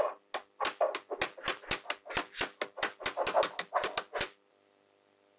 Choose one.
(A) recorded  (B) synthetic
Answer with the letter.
A